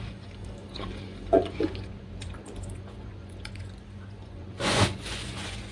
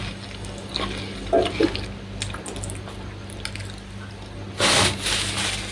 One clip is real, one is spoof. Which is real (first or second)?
second